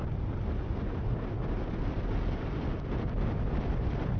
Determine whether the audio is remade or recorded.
recorded